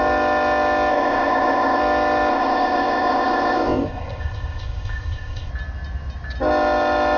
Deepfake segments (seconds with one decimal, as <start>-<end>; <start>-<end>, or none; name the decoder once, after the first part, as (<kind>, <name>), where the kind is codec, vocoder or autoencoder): 0.9-1.8 (codec, ZipCodec); 2.3-5.5